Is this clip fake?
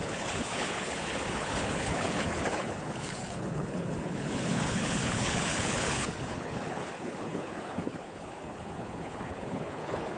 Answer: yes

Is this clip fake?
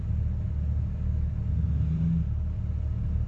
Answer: no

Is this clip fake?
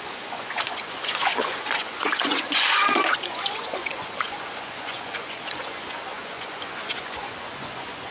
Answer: yes